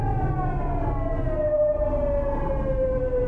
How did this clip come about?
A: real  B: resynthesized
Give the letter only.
A